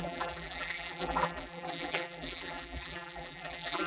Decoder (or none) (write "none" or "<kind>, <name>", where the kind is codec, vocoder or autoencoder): vocoder, BigVGAN v2